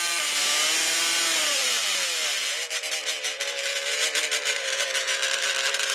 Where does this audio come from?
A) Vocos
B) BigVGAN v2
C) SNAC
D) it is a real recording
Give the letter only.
B